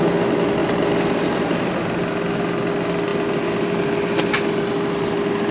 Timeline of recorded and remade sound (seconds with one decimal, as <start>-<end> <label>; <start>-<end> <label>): 0.0-5.5 recorded